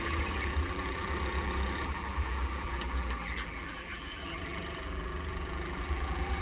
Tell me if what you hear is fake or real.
fake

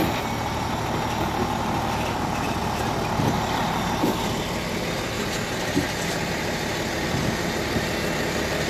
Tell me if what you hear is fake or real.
real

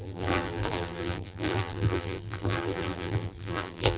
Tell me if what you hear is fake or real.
fake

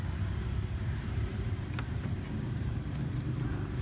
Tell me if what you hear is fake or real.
fake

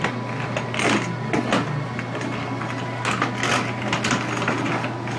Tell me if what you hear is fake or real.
real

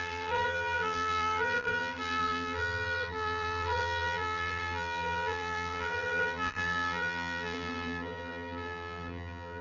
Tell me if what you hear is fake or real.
fake